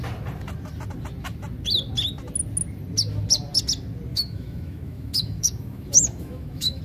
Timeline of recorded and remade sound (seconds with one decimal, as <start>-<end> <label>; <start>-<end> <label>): 0.0-4.1 recorded; 4.1-6.8 remade